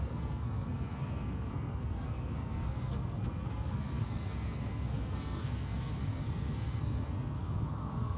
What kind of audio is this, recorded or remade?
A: remade